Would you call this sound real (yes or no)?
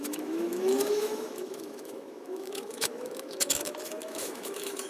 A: no